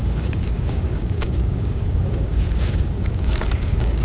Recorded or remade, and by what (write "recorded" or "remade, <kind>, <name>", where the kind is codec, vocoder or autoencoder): remade, codec, DAC